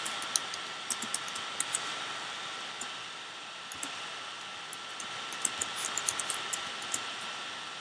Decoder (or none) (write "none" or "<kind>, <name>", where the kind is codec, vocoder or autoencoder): none